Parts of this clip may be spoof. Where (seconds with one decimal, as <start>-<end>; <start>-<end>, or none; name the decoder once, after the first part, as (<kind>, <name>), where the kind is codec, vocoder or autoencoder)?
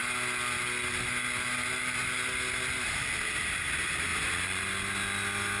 4.1-4.6 (vocoder, Vocos)